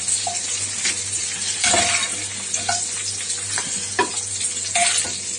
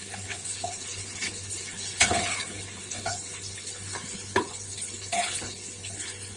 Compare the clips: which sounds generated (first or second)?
second